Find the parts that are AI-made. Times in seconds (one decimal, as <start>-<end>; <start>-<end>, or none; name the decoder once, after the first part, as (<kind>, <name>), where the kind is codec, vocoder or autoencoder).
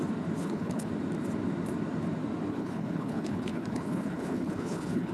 0.4-0.9 (codec, HILCodec); 2.5-5.1